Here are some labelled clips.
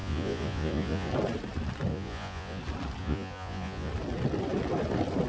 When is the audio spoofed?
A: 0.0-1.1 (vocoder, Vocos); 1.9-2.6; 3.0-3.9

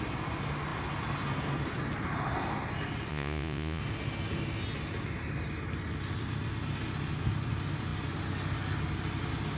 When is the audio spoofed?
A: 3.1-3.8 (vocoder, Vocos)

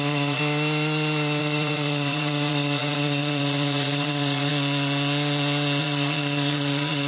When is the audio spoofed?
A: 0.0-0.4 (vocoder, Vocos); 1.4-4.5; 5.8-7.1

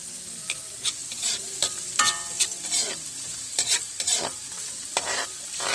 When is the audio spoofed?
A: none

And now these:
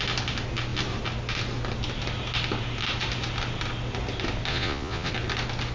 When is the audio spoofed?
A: 4.5-5.1 (vocoder, Vocos)

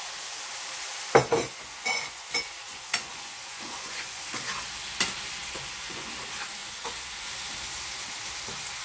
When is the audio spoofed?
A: 1.3-4.4 (vocoder, Vocos); 5.4-6.1; 6.6-7.3

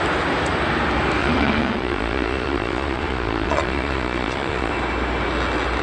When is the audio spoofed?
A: 1.2-4.7 (vocoder, Vocos)